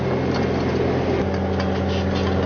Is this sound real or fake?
real